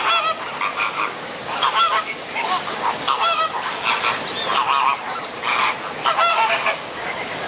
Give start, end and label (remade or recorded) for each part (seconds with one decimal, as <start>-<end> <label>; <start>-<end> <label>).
0.0-0.7 recorded; 0.7-3.7 remade; 3.7-6.3 recorded; 6.3-7.5 remade

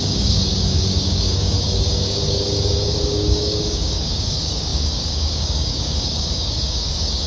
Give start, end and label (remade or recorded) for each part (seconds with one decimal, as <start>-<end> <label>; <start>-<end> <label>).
0.0-7.3 remade

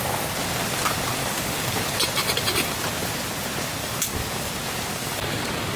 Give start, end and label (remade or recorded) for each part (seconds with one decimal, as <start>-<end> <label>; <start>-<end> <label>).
0.0-1.2 recorded; 1.2-1.8 remade; 1.8-3.8 recorded; 3.8-4.5 remade; 4.5-4.9 recorded; 4.9-5.8 remade

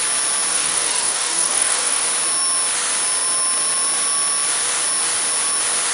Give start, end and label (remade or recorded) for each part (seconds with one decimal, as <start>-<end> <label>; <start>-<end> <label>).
0.0-0.5 recorded; 0.5-2.0 remade; 2.0-5.9 recorded